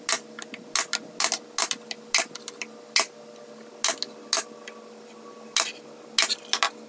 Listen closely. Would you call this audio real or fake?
real